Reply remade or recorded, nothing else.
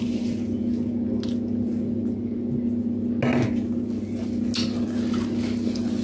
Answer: recorded